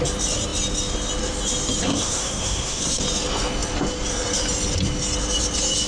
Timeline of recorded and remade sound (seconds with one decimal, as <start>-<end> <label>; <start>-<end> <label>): 0.0-1.8 recorded; 1.8-3.0 remade; 3.0-5.9 recorded